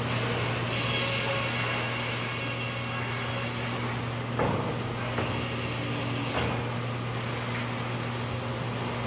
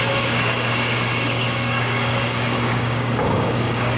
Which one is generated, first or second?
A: second